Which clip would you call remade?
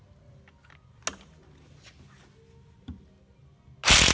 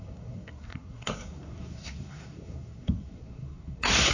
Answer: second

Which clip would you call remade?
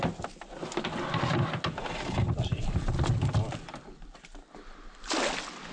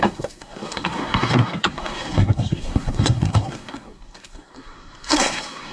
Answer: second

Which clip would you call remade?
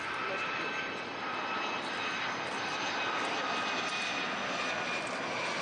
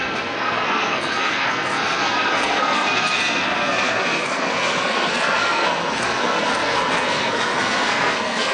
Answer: second